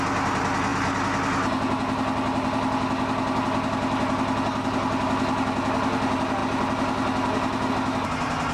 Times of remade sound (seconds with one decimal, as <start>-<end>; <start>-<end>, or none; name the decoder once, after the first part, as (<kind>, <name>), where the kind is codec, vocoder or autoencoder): none